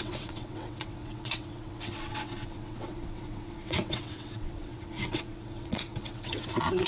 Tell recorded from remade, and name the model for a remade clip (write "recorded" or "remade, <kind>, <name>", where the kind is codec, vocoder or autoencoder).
remade, vocoder, WaveNeXt